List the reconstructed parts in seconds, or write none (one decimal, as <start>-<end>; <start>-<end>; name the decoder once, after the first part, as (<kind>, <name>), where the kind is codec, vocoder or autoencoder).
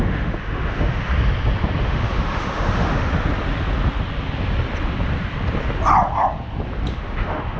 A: 0.0-1.1 (autoencoder, DAC-VAE); 1.8-3.1; 6.9-7.6